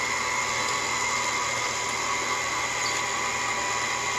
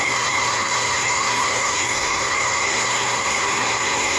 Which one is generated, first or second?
second